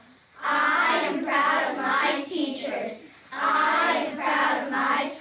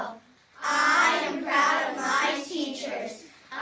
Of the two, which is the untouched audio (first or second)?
second